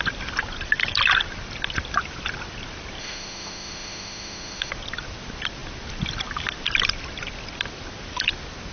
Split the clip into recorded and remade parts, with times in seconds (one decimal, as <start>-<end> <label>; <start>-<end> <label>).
0.0-3.0 recorded; 3.0-4.7 remade; 4.7-8.7 recorded